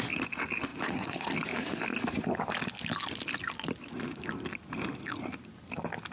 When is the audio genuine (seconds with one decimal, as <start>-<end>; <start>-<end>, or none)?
0.0-0.7; 1.3-6.1

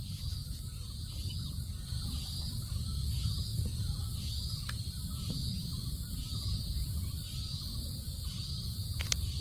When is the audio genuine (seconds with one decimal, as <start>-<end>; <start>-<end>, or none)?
0.0-9.4

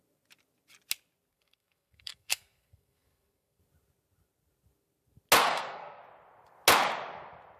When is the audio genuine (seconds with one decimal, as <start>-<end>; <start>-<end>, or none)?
0.0-1.3; 3.6-5.4; 6.0-7.6

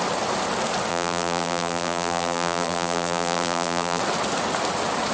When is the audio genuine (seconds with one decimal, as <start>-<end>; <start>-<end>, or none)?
0.0-0.9; 4.0-5.1